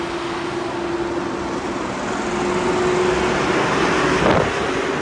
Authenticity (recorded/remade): recorded